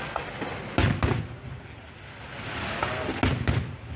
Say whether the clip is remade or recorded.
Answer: recorded